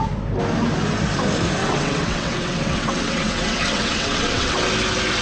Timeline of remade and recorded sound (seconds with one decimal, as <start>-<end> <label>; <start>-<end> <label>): 0.0-1.6 recorded; 1.6-4.7 remade; 4.7-5.2 recorded